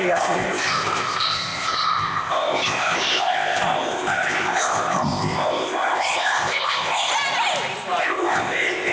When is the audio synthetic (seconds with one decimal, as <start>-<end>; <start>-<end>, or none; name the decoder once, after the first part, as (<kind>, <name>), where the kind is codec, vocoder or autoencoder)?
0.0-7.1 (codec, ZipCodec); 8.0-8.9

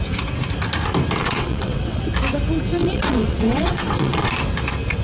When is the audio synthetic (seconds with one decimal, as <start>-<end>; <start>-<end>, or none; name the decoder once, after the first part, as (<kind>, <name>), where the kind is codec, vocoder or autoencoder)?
1.2-2.0 (vocoder, WaveNeXt); 2.8-4.3

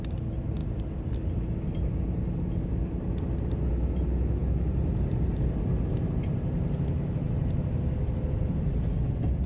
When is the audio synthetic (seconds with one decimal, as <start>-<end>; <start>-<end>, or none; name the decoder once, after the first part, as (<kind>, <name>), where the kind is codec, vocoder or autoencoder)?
none

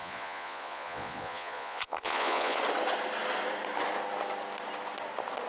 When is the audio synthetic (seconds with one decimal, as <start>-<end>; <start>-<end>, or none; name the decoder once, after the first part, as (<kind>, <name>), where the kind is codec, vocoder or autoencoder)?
0.0-2.6 (vocoder, Vocos)

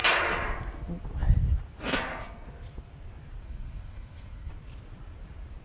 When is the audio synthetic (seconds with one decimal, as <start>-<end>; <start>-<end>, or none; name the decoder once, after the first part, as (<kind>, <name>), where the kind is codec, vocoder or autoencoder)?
3.4-4.5 (codec, SNAC)

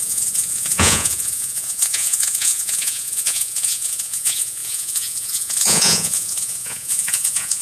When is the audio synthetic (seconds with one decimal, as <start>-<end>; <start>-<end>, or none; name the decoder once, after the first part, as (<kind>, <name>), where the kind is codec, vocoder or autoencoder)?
0.0-7.6 (vocoder, Vocos)

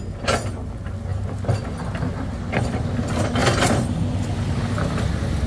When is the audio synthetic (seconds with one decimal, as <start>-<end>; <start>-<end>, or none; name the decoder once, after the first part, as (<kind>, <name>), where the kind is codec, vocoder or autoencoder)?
none

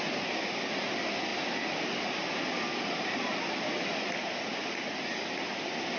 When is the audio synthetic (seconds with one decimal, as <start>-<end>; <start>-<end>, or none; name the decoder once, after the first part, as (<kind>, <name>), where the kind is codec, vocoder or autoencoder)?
none